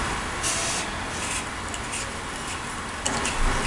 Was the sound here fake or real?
real